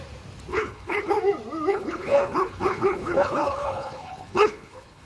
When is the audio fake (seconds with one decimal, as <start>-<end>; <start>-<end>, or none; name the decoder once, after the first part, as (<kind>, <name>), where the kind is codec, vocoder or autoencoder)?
0.5-1.2 (codec, HILCodec); 1.7-5.1